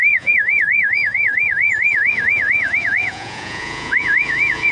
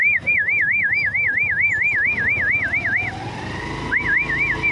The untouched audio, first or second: second